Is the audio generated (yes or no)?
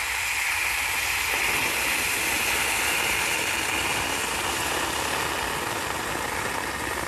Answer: no